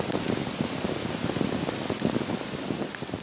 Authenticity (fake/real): real